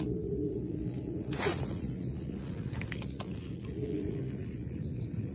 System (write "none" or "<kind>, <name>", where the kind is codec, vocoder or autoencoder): vocoder, Vocos